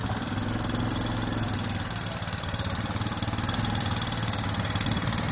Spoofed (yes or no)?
no